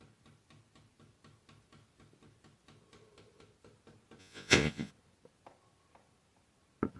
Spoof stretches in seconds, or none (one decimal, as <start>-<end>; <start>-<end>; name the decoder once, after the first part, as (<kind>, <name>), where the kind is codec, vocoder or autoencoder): 4.2-4.9 (vocoder, Vocos)